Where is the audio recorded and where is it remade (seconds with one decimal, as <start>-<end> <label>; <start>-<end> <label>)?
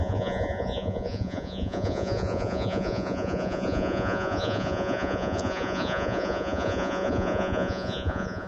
0.0-8.5 remade